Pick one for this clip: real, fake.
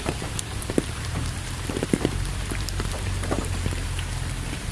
fake